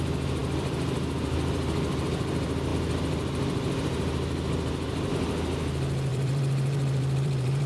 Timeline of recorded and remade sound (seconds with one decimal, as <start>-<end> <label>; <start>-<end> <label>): 0.0-0.4 recorded; 0.4-2.0 remade; 2.0-6.1 recorded; 6.1-7.7 remade